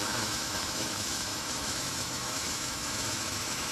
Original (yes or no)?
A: no